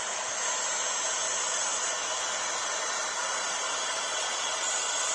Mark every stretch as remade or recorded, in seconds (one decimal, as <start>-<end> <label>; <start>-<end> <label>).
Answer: 0.0-3.2 recorded; 3.2-5.1 remade